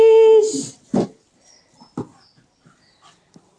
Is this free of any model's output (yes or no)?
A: yes